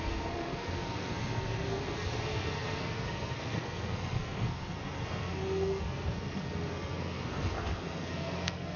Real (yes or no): no